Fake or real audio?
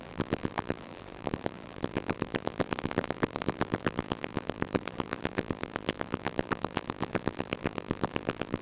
fake